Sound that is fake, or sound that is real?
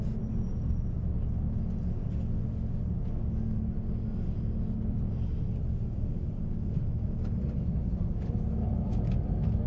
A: real